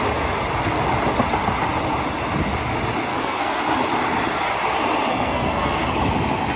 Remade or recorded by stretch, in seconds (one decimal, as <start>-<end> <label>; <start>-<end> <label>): 0.0-3.1 recorded; 3.1-3.6 remade; 3.6-5.1 recorded; 5.1-6.0 remade; 6.0-6.6 recorded

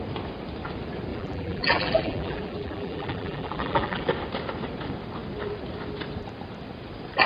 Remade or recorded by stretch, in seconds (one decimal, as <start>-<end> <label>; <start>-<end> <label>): 0.0-1.1 recorded; 1.1-4.0 remade; 4.0-7.3 recorded

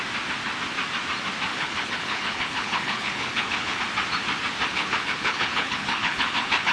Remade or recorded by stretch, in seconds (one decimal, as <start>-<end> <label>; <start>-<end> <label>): 0.0-1.5 recorded; 1.5-3.8 remade; 3.8-4.7 recorded; 4.7-6.7 remade

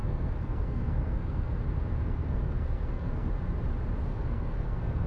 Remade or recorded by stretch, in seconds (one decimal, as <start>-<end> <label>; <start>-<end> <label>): 0.0-1.6 remade; 1.6-2.0 recorded; 2.0-3.3 remade; 3.3-4.1 recorded; 4.1-5.1 remade